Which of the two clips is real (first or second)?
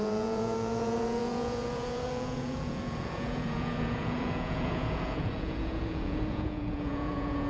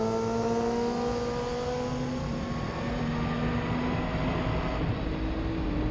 second